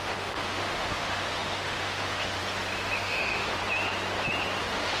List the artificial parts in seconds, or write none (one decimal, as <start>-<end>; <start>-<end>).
0.0-2.4; 3.0-3.6; 4.6-5.0